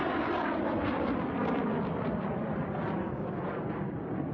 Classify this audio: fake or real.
fake